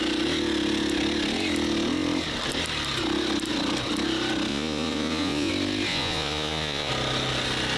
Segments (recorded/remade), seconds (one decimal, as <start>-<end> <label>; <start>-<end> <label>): 0.0-4.5 recorded; 4.5-5.5 remade; 5.5-5.9 recorded; 5.9-6.9 remade; 6.9-7.8 recorded